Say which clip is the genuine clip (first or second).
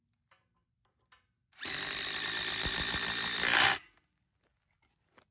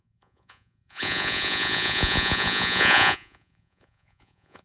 first